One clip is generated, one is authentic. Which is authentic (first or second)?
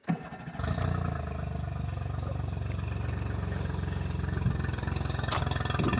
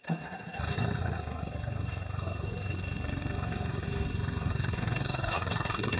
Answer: first